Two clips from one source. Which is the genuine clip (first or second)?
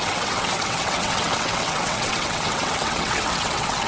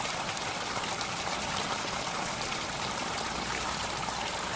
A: second